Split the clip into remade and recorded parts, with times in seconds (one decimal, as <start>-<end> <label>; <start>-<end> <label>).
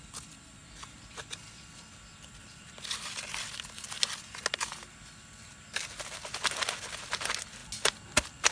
0.0-8.5 recorded